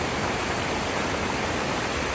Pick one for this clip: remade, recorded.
recorded